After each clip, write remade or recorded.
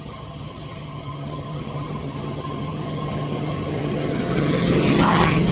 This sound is remade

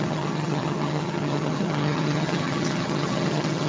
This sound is remade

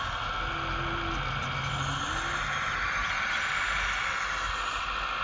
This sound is recorded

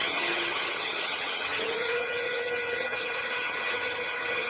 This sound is remade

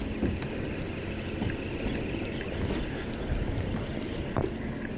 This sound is recorded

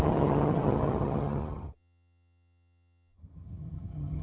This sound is remade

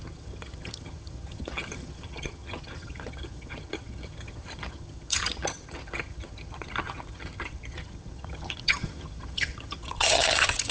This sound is remade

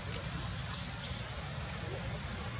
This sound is recorded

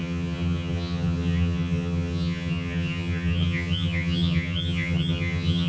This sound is remade